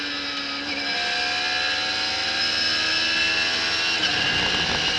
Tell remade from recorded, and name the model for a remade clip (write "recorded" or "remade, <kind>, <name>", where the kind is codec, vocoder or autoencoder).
recorded